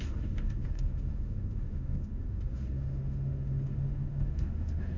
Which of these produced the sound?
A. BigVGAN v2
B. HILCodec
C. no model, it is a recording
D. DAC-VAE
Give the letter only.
D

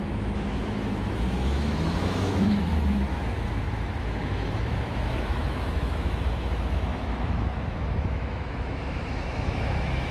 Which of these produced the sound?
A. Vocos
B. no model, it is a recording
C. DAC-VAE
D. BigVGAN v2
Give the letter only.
C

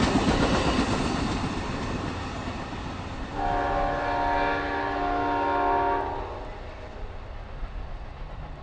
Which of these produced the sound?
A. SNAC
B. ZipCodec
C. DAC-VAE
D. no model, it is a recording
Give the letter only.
D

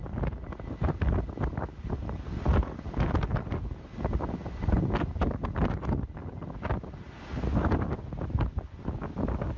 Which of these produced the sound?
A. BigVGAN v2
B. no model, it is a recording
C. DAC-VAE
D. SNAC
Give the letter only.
B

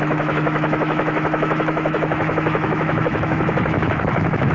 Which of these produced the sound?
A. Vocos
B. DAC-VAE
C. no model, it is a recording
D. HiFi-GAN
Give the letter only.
B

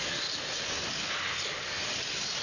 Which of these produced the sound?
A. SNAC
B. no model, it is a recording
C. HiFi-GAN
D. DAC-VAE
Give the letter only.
B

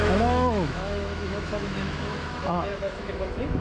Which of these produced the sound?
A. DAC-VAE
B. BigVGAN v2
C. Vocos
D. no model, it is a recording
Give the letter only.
A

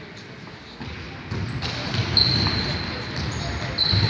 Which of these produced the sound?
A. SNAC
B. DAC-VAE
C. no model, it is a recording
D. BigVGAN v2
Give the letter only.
C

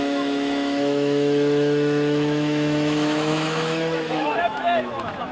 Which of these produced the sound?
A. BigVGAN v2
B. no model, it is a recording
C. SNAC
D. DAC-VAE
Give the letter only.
D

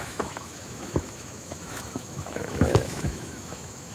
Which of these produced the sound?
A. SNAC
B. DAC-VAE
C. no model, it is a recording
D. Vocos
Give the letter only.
B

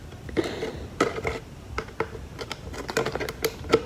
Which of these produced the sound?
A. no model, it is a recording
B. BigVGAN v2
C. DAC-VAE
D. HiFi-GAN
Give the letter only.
A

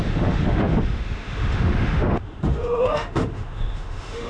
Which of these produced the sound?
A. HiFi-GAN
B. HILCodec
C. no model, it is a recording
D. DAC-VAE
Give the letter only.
D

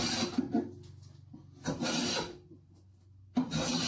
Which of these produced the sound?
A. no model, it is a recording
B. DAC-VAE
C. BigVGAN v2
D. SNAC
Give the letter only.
A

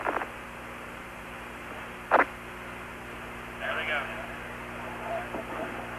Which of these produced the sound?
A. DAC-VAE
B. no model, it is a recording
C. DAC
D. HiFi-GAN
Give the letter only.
B